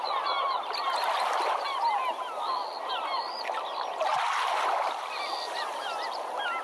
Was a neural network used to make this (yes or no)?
no